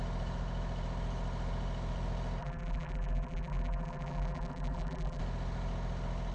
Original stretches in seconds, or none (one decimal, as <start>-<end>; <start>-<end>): 0.0-2.4; 5.2-6.3